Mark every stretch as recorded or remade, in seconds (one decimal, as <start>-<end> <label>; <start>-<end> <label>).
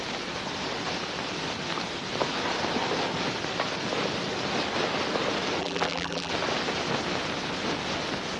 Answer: 0.0-5.6 recorded; 5.6-6.3 remade; 6.3-8.4 recorded